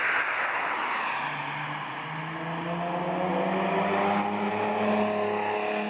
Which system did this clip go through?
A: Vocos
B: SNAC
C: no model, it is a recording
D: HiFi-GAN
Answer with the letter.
C